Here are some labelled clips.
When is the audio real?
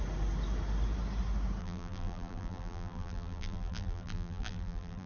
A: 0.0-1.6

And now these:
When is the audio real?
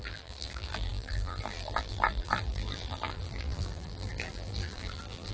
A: none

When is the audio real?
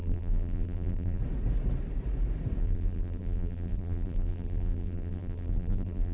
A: 1.2-2.6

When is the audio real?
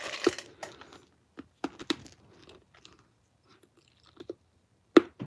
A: 0.0-5.3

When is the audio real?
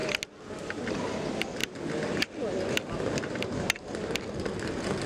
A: 0.0-5.1